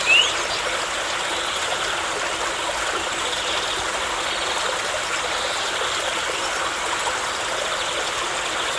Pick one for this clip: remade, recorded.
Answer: recorded